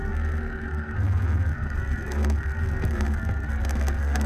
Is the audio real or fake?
fake